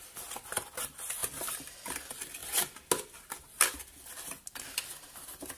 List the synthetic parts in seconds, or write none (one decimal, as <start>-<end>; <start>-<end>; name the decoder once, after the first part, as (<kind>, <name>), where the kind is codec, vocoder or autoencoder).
none